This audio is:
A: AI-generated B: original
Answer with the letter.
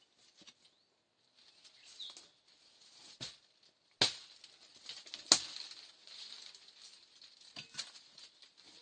B